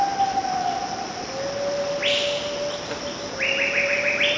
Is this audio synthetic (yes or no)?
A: no